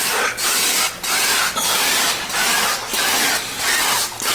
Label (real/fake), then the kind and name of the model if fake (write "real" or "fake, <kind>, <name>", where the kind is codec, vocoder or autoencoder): real